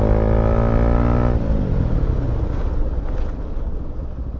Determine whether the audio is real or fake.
real